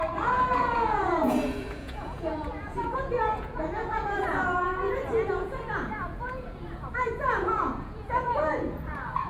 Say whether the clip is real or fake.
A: fake